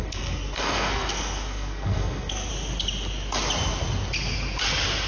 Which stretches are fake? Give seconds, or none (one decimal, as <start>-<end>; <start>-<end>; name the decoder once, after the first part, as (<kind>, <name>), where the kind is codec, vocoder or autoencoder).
0.0-2.5 (codec, SNAC)